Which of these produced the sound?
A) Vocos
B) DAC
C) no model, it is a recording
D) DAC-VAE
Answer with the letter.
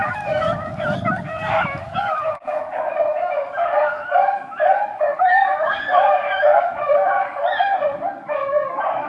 B